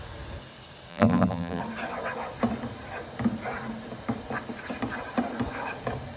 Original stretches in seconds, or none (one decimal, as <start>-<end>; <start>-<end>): 0.0-0.9; 1.6-6.2